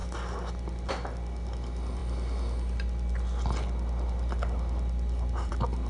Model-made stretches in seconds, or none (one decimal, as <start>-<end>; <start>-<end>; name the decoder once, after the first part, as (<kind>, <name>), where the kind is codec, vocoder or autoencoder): none

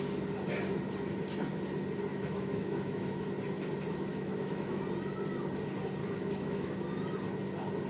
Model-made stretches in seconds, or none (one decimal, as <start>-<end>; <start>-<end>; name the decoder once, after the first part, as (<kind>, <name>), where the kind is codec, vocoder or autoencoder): 2.1-3.2 (autoencoder, DAC-VAE); 4.1-4.8; 6.0-6.7